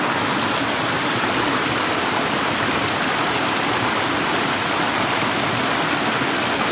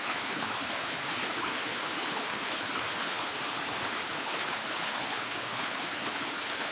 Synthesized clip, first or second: second